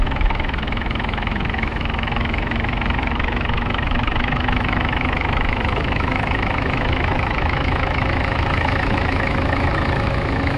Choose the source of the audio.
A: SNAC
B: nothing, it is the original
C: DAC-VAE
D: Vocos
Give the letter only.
C